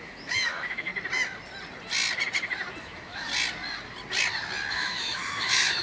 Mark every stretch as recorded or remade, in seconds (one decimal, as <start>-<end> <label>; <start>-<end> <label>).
0.0-0.9 remade; 0.9-2.8 recorded; 2.8-3.3 remade; 3.3-4.7 recorded; 4.7-5.8 remade